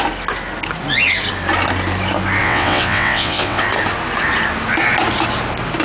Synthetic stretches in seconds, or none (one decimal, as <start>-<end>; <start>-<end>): 2.4-3.6